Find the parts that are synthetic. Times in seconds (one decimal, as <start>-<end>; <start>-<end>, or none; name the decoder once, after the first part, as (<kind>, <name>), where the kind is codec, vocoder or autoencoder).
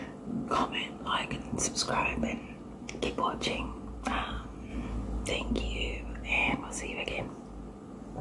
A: none